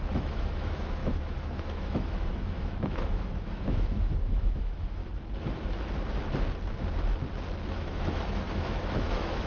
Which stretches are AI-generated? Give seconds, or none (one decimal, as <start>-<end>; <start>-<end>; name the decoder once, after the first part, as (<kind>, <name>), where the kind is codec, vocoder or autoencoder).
0.0-5.0 (autoencoder, DAC-VAE); 7.7-9.5